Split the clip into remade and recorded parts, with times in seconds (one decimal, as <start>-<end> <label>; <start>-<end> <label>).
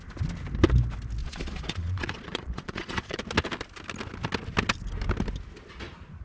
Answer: 0.0-1.2 recorded; 1.2-3.2 remade; 3.2-6.2 recorded